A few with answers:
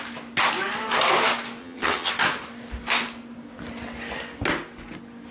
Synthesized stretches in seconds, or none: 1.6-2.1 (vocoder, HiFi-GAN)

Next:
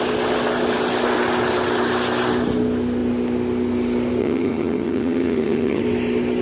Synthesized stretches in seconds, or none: 4.2-5.8 (vocoder, HiFi-GAN)

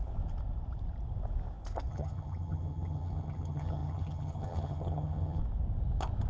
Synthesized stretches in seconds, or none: 1.9-5.4 (vocoder, HiFi-GAN)